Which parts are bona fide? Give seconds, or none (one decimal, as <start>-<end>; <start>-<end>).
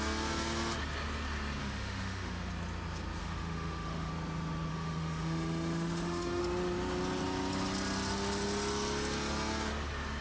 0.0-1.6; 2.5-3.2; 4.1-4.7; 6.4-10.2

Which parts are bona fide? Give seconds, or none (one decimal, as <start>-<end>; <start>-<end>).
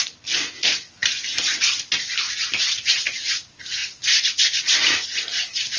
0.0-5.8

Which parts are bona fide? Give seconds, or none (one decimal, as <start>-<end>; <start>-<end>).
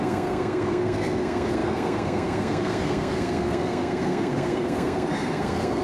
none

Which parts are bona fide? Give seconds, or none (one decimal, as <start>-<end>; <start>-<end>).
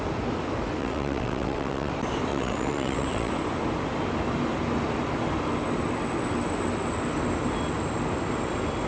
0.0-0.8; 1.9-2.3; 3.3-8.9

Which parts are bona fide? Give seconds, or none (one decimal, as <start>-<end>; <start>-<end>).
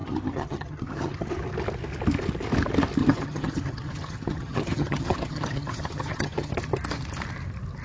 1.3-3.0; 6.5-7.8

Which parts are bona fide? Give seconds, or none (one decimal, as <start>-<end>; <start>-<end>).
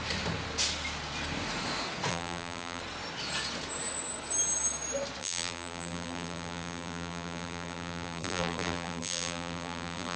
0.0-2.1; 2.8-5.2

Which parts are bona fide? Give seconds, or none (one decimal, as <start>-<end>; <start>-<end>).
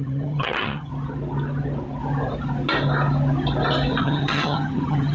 0.9-4.0